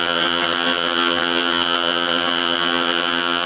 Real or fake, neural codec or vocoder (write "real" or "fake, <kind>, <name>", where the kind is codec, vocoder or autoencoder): fake, vocoder, HiFi-GAN